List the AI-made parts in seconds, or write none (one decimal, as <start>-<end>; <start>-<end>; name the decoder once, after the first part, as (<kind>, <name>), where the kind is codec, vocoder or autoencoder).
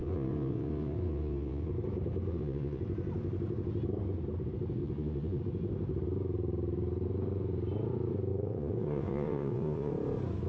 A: 0.0-1.7 (vocoder, Vocos); 2.3-2.8; 4.8-5.4; 8.3-9.9